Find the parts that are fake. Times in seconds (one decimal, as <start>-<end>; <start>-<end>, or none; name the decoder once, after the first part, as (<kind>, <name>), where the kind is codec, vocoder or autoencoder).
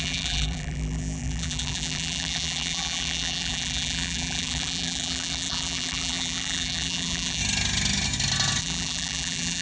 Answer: 0.0-7.4 (vocoder, BigVGAN v2); 8.6-9.6